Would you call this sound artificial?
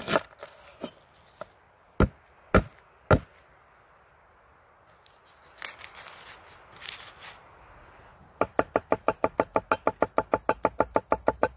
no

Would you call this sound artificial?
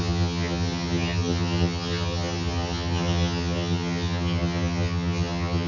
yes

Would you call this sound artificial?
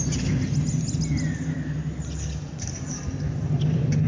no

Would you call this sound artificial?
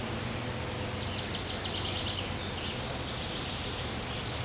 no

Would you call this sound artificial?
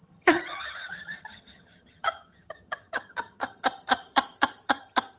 yes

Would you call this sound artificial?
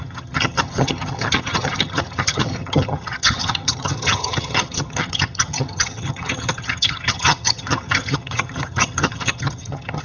yes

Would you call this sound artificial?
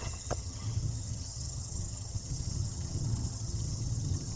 yes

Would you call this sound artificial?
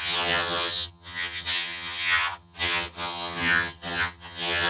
yes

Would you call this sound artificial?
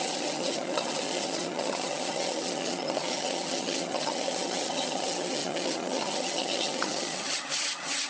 yes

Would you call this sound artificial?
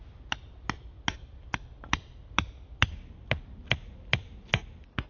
no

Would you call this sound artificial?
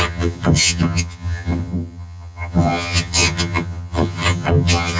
yes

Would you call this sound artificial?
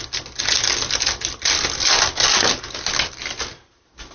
no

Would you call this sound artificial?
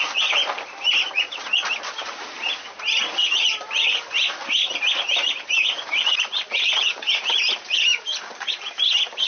no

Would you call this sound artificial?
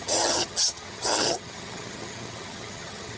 yes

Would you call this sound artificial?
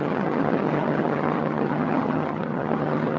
yes